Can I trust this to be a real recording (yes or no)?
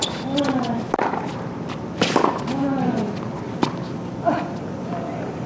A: yes